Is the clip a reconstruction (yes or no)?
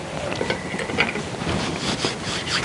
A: no